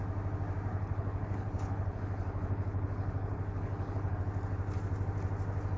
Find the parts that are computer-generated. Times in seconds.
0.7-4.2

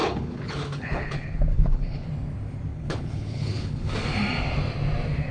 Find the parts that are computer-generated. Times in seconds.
0.0-2.1; 2.7-3.9

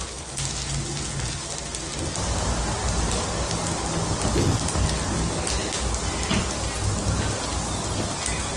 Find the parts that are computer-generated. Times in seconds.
none

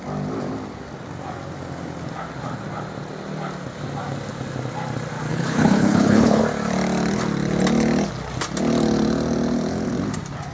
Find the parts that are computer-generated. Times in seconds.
5.3-6.4

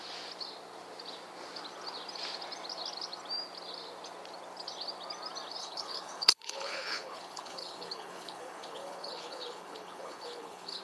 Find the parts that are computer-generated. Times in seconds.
5.6-10.8